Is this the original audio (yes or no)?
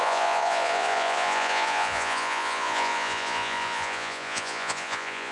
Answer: no